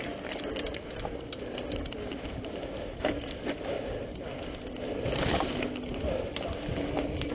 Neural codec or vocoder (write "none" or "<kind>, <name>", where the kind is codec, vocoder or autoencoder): none